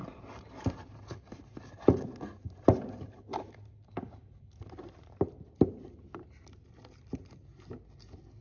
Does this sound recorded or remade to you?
recorded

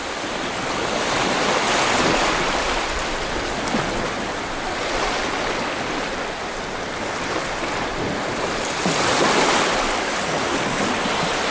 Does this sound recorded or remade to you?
recorded